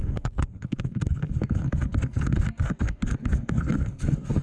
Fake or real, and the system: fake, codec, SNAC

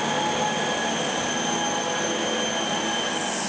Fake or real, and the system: real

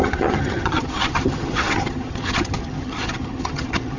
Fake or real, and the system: fake, vocoder, HiFi-GAN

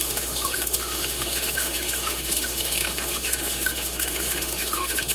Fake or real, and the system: fake, autoencoder, DAC-VAE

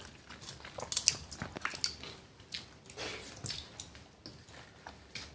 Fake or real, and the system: real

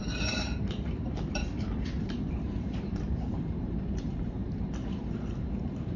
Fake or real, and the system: fake, vocoder, BigVGAN v2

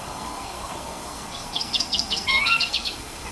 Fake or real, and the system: fake, codec, SNAC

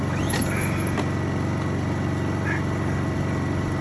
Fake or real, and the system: real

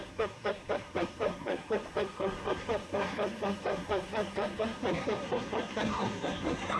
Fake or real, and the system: fake, codec, SNAC